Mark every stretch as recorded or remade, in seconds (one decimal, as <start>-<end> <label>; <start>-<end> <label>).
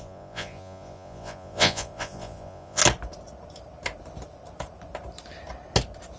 0.0-2.8 remade; 2.8-6.2 recorded